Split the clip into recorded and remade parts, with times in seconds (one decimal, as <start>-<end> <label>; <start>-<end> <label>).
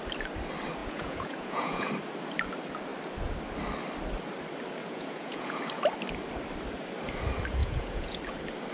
0.0-0.8 recorded; 0.8-1.9 remade; 1.9-4.8 recorded; 4.8-5.6 remade; 5.6-7.6 recorded; 7.6-8.2 remade; 8.2-8.7 recorded